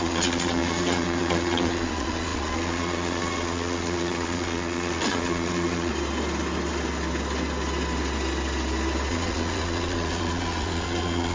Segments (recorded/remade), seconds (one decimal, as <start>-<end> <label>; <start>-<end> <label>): 0.0-5.9 remade; 5.9-9.1 recorded; 9.1-11.3 remade